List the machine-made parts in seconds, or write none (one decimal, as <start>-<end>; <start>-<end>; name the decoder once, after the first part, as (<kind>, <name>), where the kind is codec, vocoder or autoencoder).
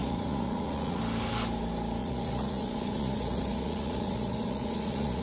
0.0-1.0 (vocoder, Vocos); 2.0-5.2